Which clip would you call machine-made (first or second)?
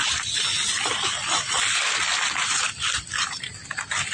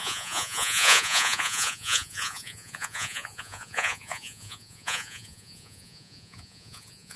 second